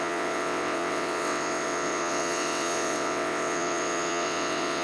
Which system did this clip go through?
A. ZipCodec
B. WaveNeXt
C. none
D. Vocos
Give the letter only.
B